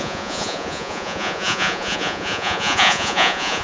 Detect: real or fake fake